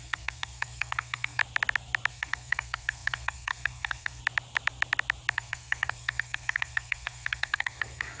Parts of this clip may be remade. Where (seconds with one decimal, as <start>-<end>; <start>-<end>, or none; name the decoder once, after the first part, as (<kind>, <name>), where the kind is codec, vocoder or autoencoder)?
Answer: 0.0-1.4 (codec, SNAC); 2.1-4.2; 5.3-8.2